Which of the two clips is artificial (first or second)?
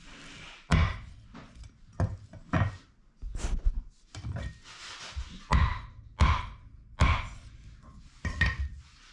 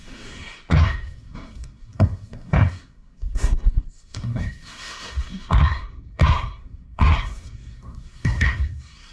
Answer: second